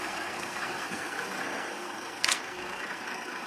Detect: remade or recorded remade